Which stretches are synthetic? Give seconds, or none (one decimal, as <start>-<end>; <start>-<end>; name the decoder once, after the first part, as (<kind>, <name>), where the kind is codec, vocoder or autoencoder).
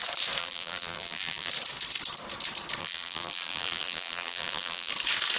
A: 0.4-1.5 (vocoder, BigVGAN v2); 2.8-4.9